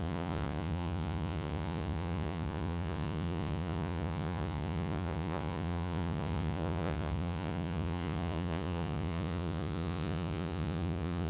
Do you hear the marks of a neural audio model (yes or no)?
yes